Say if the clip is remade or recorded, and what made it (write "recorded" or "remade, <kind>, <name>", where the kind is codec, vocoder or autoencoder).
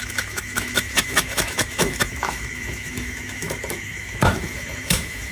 remade, autoencoder, DAC-VAE